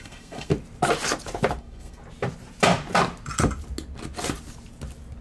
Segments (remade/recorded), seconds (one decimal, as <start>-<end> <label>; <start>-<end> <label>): 0.0-0.5 remade; 0.5-1.6 recorded; 1.6-2.0 remade; 2.0-5.2 recorded